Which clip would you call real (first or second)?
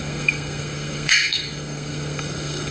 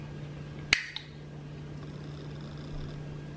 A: second